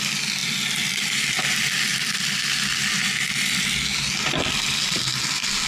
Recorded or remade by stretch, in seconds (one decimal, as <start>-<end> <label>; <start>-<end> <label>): 0.0-0.4 recorded; 0.4-1.3 remade; 1.3-5.7 recorded